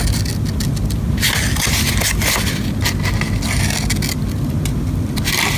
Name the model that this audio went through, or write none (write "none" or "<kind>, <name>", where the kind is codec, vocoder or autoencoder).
none